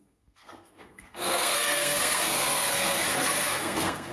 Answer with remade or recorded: remade